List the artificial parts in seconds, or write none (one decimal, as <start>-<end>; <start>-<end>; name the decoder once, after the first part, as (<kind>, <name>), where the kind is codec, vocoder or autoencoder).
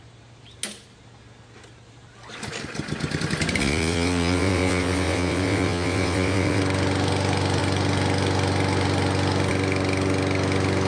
3.6-6.6 (vocoder, WaveNeXt)